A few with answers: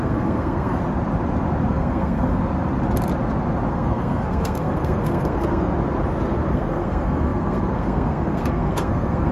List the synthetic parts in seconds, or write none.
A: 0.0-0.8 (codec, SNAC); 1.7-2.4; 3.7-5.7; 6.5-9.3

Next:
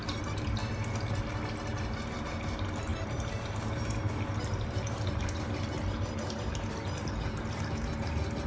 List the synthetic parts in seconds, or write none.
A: 0.0-0.6 (vocoder, BigVGAN v2); 2.2-8.5